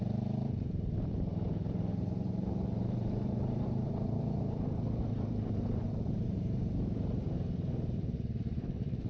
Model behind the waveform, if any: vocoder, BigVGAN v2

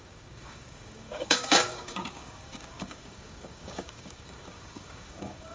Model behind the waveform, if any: codec, DAC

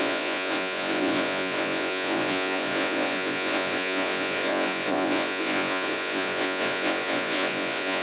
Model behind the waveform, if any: vocoder, Vocos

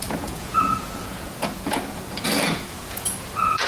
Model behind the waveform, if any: vocoder, Vocos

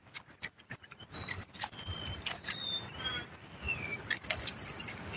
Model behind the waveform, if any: vocoder, BigVGAN v2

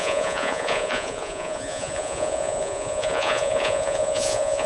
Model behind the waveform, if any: vocoder, Vocos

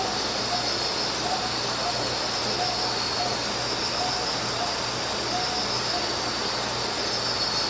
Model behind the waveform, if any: none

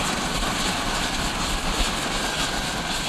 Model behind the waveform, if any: none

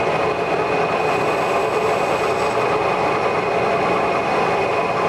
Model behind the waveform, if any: none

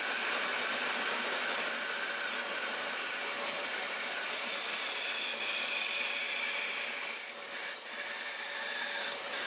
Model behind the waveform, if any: none